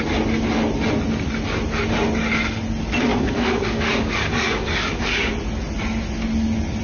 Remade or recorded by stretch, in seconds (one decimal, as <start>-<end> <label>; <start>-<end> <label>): 0.0-3.1 recorded; 3.1-5.3 remade; 5.3-6.8 recorded